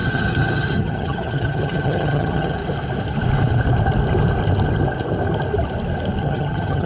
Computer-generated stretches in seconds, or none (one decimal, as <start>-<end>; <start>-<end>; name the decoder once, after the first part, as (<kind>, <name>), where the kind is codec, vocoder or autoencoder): 0.0-2.6 (vocoder, HiFi-GAN); 6.2-6.9